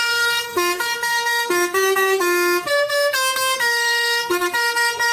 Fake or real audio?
fake